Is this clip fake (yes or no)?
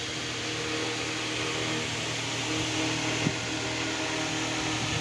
no